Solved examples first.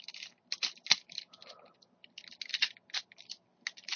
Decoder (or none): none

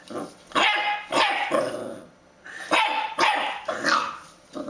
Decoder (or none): none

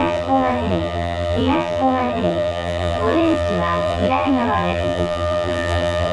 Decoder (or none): vocoder, BigVGAN v2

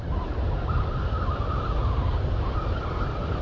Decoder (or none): none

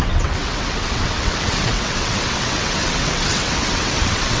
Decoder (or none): vocoder, WaveNeXt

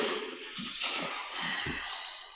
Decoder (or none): vocoder, Vocos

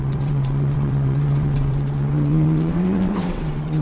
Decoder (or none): vocoder, WaveNeXt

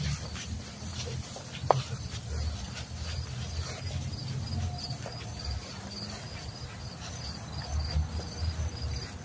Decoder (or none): none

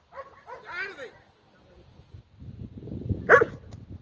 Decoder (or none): none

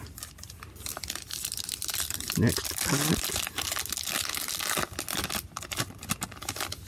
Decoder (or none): none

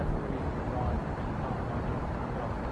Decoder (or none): none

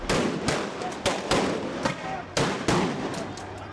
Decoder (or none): none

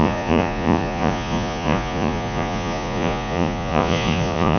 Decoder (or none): vocoder, Vocos